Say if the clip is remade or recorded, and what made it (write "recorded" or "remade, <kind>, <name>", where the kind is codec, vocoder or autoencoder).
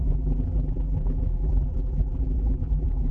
remade, vocoder, BigVGAN v2